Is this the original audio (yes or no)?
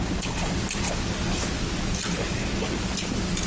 yes